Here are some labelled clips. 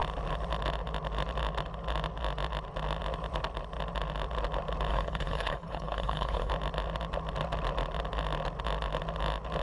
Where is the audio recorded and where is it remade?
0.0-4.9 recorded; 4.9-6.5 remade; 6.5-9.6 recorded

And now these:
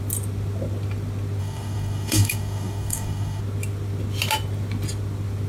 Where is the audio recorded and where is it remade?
0.0-1.4 recorded; 1.4-3.4 remade; 3.4-5.5 recorded